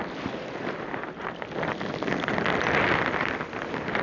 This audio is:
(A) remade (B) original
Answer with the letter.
B